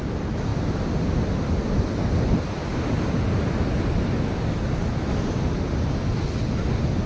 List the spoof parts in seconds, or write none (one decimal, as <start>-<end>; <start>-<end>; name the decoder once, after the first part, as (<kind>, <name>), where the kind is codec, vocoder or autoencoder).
none